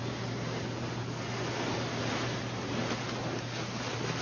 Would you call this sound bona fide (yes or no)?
yes